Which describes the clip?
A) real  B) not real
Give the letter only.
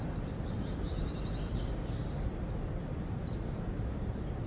A